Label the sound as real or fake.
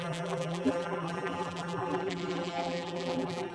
fake